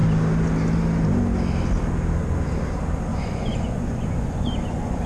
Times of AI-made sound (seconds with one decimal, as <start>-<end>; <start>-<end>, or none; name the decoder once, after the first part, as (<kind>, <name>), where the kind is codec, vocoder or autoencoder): 3.1-5.1 (vocoder, Vocos)